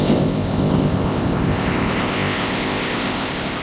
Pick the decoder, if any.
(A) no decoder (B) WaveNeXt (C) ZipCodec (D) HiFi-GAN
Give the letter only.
C